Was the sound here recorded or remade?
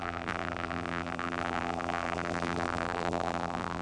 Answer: remade